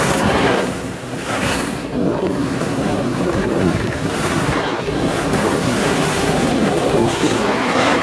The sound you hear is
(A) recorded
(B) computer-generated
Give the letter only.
B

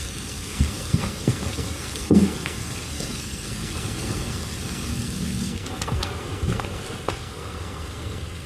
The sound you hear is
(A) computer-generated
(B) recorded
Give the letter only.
A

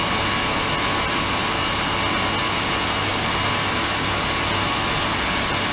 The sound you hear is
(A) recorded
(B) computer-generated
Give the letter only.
A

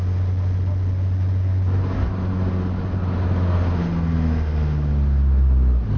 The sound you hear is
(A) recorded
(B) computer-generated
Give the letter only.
A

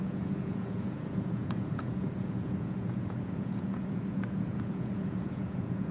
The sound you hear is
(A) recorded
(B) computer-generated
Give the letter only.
B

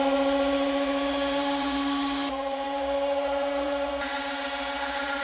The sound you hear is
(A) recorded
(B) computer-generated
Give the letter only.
B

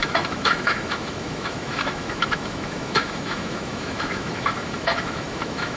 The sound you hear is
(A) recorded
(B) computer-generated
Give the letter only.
B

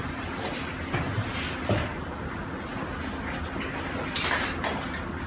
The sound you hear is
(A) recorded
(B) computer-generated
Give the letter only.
A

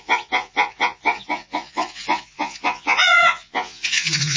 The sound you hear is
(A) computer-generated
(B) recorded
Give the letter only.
A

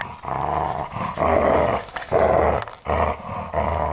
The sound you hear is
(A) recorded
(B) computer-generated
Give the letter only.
A